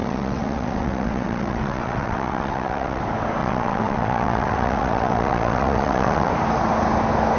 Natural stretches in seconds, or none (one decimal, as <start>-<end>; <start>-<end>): 3.0-3.4; 6.3-7.4